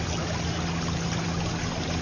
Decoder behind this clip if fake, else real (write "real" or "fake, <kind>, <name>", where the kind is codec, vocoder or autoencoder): real